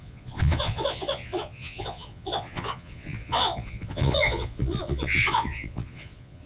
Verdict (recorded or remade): remade